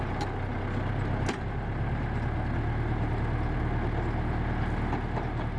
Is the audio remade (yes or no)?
no